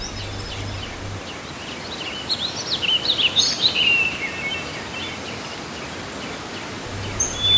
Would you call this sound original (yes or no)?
yes